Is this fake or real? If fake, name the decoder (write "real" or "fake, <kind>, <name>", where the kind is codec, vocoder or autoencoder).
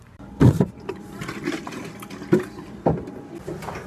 fake, vocoder, BigVGAN v2